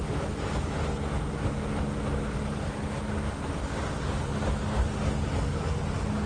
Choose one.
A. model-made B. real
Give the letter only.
B